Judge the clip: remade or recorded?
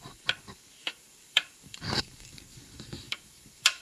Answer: remade